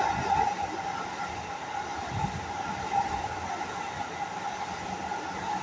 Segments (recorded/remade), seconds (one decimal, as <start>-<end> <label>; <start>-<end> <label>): 0.0-5.6 recorded